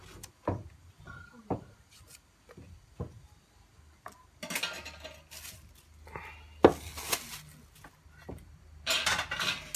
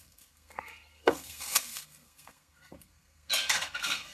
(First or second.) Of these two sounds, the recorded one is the first